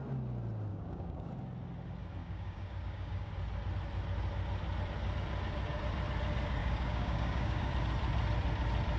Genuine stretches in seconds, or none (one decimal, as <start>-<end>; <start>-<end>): 0.0-0.7; 1.3-2.2; 3.3-6.6; 7.7-9.0